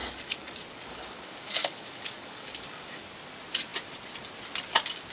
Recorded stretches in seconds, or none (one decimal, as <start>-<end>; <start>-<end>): 3.1-5.1